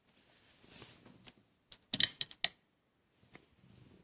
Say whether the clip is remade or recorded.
recorded